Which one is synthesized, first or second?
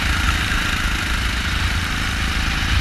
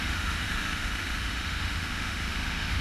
second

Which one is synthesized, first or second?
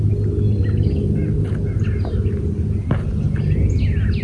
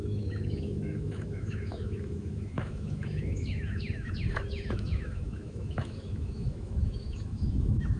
second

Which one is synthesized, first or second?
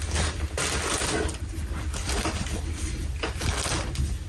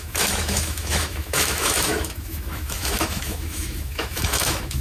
second